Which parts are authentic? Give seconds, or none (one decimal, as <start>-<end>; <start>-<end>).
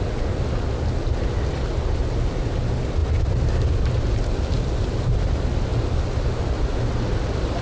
0.0-7.6